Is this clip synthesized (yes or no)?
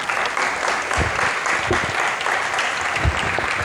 no